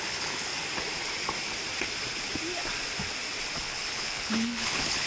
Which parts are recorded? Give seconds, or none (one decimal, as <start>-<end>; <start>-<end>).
0.5-3.6